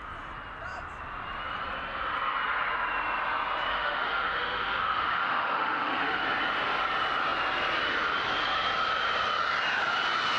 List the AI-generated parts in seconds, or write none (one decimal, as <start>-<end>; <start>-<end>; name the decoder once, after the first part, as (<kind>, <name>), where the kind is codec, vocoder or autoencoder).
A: 3.7-6.2 (autoencoder, DAC-VAE)